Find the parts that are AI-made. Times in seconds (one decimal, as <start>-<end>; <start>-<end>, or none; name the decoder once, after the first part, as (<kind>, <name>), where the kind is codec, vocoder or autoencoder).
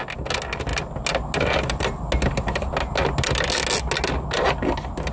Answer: none